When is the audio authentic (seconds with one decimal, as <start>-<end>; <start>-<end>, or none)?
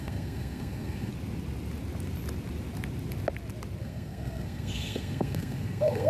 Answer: 1.1-3.8